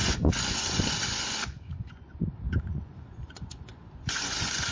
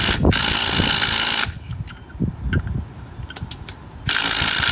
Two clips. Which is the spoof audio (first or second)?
first